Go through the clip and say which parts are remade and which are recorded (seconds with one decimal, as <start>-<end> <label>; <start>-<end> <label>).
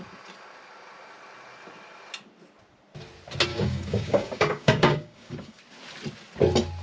0.0-3.5 recorded; 3.5-5.6 remade; 5.6-6.8 recorded